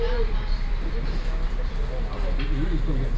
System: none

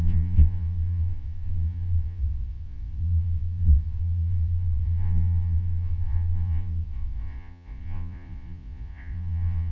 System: vocoder, Vocos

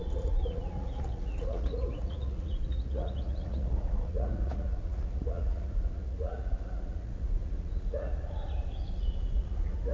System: vocoder, Vocos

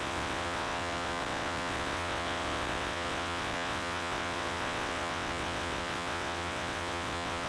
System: vocoder, WaveNeXt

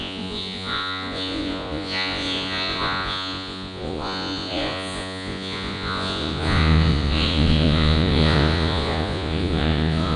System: vocoder, Vocos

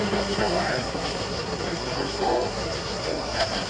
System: codec, SNAC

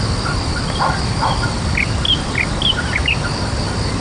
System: none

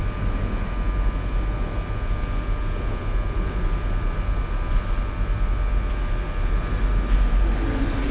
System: none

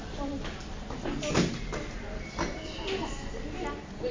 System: none